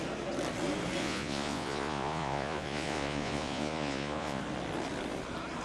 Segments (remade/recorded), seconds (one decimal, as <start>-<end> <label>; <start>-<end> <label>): 0.0-1.0 recorded; 1.0-4.4 remade; 4.4-5.6 recorded